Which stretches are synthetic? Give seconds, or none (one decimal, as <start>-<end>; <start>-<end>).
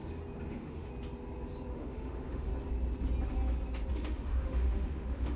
0.5-0.9; 1.7-2.5; 3.9-5.4